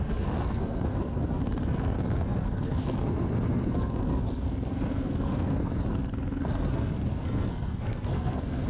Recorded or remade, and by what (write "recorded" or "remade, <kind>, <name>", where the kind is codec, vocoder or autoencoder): remade, codec, SNAC